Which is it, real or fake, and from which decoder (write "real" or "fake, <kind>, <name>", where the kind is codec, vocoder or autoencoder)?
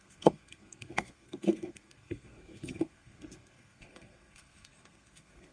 fake, codec, SNAC